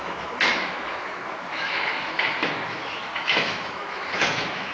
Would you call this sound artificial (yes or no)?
yes